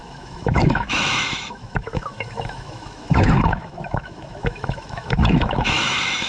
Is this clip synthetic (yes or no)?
yes